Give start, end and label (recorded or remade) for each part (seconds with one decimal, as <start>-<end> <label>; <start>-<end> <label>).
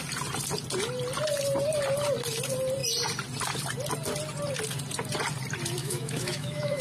0.0-5.8 recorded; 5.8-6.8 remade